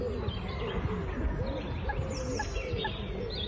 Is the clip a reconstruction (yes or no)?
no